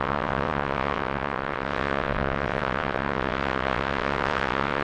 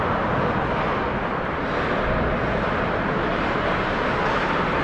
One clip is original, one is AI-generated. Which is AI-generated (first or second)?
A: first